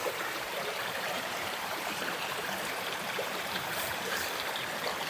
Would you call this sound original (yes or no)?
no